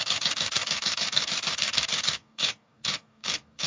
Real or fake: fake